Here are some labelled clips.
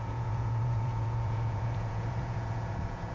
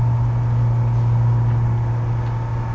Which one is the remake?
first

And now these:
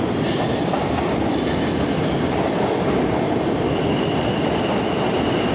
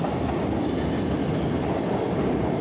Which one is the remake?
first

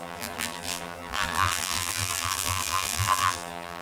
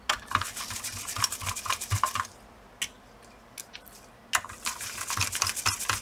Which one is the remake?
first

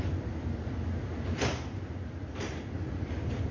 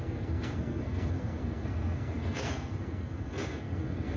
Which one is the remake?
second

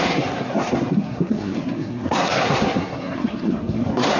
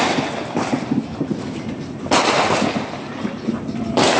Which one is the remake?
first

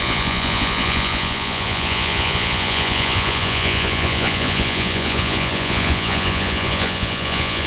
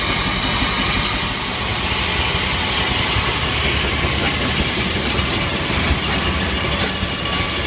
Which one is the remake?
first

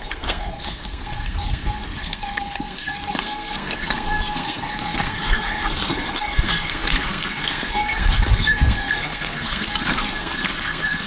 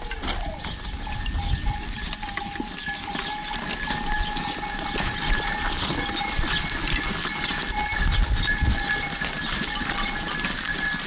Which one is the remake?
first